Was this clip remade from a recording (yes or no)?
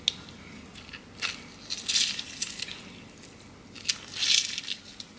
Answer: no